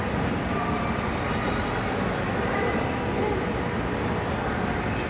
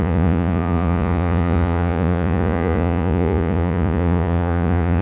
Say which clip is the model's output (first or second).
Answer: second